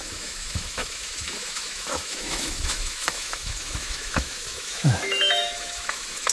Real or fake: fake